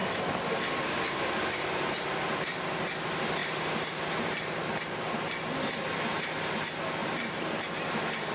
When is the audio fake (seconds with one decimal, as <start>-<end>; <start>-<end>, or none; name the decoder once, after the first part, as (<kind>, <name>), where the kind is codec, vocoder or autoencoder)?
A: 3.4-5.7 (vocoder, BigVGAN v2); 7.0-7.7